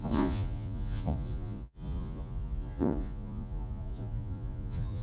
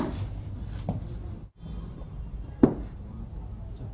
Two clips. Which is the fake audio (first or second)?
first